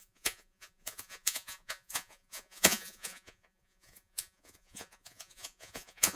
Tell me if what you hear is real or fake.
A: fake